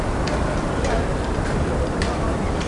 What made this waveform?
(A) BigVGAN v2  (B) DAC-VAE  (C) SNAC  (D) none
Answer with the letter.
D